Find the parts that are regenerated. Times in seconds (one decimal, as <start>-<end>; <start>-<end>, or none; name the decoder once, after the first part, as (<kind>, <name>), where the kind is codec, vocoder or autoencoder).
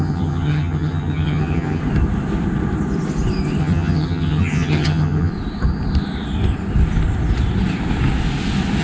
0.0-1.8 (vocoder, HiFi-GAN); 3.6-5.3